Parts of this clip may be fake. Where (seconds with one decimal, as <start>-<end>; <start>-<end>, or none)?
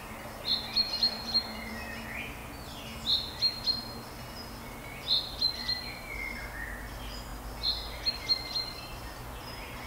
0.7-1.7